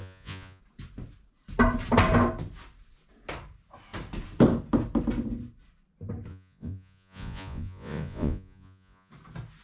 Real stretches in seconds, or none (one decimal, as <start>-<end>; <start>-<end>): 0.6-6.3; 9.1-9.6